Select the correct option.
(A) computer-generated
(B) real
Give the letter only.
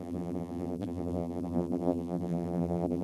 A